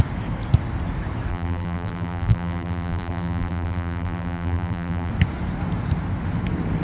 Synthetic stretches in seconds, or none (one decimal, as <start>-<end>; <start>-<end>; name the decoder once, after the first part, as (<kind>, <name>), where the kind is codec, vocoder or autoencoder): 1.3-5.1 (vocoder, BigVGAN v2)